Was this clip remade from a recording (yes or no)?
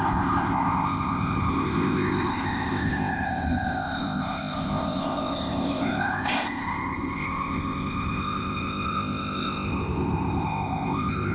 yes